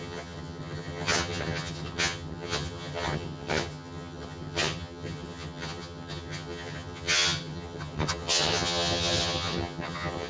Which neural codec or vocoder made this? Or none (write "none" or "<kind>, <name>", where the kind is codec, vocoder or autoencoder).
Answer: vocoder, HiFi-GAN